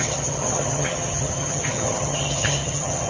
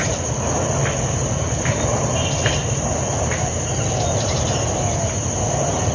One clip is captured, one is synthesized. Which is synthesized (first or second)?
first